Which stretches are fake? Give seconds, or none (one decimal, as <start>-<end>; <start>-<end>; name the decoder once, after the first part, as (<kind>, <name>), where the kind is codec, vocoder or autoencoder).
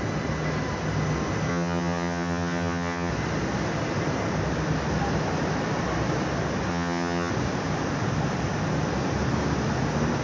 1.5-3.1 (vocoder, HiFi-GAN); 6.7-7.3